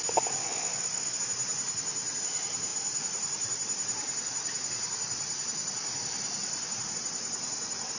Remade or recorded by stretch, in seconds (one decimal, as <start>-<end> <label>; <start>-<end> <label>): 0.0-0.4 recorded; 0.4-1.2 remade; 1.2-8.0 recorded